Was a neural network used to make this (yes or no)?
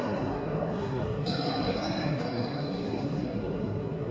yes